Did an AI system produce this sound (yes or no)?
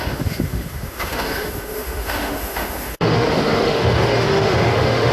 yes